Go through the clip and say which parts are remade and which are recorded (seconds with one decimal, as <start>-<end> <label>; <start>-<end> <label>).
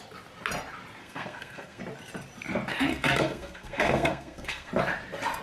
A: 0.0-1.0 recorded; 1.0-1.8 remade; 1.8-2.9 recorded; 2.9-4.7 remade; 4.7-5.4 recorded